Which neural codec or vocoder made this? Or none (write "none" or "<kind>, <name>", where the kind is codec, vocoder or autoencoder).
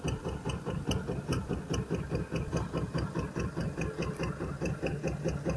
none